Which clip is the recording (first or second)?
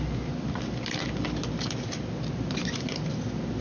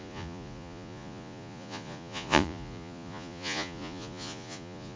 first